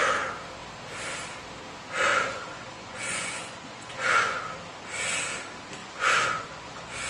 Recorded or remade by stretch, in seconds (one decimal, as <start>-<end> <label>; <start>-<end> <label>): 0.0-2.1 recorded; 2.1-4.4 remade; 4.4-5.8 recorded; 5.8-7.1 remade